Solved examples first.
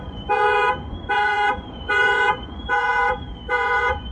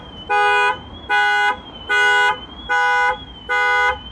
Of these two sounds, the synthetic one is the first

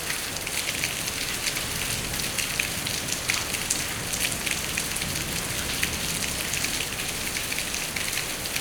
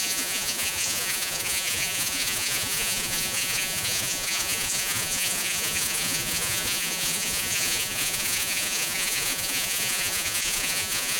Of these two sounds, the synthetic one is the second